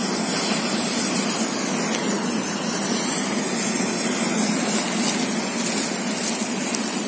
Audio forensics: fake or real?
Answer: real